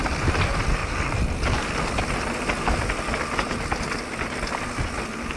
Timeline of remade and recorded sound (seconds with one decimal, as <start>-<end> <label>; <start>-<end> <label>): 0.0-5.4 recorded